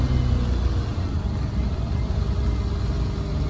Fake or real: real